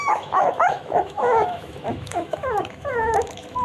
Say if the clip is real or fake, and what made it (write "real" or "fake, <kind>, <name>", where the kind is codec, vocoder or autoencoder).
fake, autoencoder, DAC-VAE